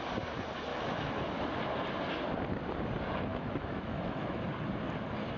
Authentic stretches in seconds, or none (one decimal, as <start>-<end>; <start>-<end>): 0.0-0.7; 1.2-3.3; 4.4-5.4